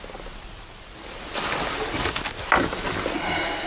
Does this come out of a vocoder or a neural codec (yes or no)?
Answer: no